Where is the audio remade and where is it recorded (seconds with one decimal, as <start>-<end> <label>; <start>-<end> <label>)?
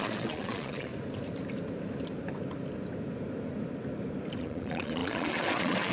0.0-0.9 remade; 0.9-4.4 recorded; 4.4-5.9 remade